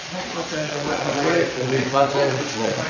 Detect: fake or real fake